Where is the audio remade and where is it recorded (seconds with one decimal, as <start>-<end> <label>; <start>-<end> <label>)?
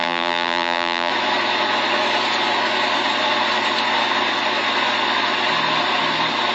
0.0-1.1 remade; 1.1-6.5 recorded